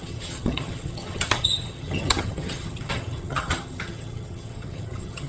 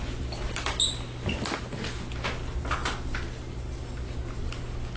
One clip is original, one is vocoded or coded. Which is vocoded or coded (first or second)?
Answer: first